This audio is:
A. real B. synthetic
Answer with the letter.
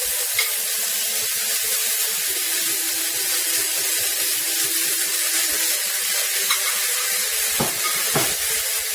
B